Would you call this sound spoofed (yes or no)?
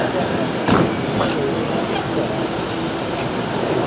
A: no